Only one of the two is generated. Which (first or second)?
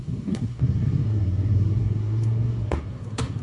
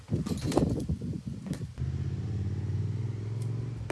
first